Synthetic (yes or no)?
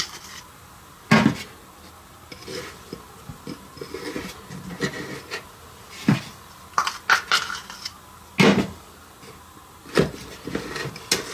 no